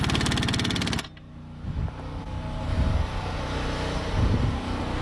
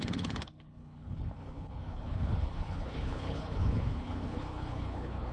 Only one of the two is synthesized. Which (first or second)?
second